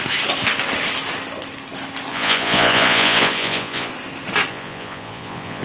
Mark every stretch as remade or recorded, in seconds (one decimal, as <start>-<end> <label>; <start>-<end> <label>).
0.0-2.1 recorded; 2.1-3.9 remade; 3.9-4.5 recorded; 4.5-5.6 remade